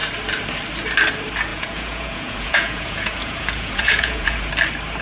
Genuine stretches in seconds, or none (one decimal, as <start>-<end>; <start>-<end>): 0.0-1.5; 4.5-5.0